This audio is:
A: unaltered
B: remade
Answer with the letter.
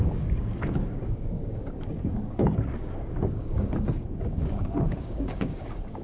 B